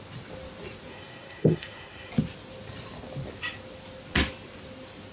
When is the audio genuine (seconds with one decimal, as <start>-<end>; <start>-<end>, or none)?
0.0-0.9; 2.1-5.1